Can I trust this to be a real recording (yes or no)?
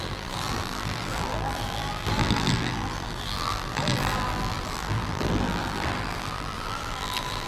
no